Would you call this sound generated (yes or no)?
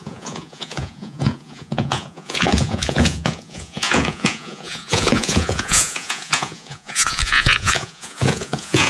yes